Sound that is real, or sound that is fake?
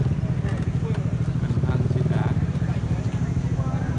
real